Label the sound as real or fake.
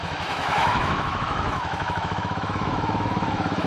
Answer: fake